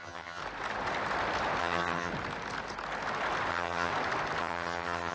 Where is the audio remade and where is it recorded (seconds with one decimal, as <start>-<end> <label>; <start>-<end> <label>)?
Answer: 0.0-0.4 remade; 0.4-1.6 recorded; 1.6-2.1 remade; 2.1-3.5 recorded; 3.5-3.9 remade; 3.9-4.4 recorded; 4.4-5.1 remade